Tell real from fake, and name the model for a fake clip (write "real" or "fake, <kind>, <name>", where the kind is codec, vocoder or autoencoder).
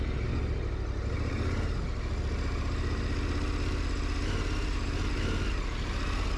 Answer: real